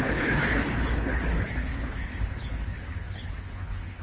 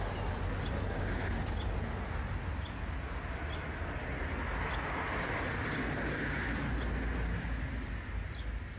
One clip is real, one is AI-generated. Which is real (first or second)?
second